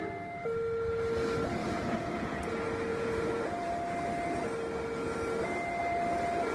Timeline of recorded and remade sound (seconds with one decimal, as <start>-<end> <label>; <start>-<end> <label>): 0.0-1.6 recorded; 1.6-2.5 remade; 2.5-2.9 recorded; 2.9-3.7 remade; 3.7-6.5 recorded

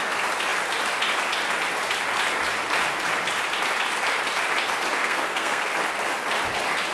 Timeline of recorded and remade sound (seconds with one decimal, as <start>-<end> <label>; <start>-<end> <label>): 0.0-5.0 recorded; 5.0-5.7 remade; 5.7-6.9 recorded

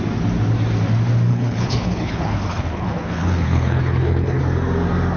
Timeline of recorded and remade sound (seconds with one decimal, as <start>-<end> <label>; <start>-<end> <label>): 0.0-1.3 recorded; 1.3-4.4 remade; 4.4-5.2 recorded

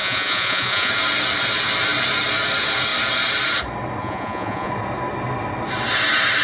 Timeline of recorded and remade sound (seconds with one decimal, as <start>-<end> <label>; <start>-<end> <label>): 0.0-0.9 remade; 0.9-4.0 recorded; 4.0-4.7 remade; 4.7-6.4 recorded

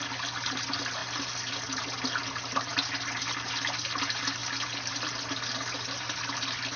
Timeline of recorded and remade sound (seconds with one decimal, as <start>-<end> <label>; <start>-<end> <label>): 0.0-6.8 recorded

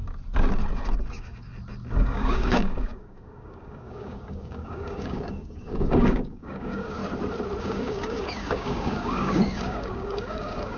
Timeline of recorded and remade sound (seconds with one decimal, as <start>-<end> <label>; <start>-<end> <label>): 0.0-1.1 recorded; 1.1-1.5 remade; 1.5-2.0 recorded; 2.0-7.0 remade; 7.0-7.6 recorded; 7.6-10.8 remade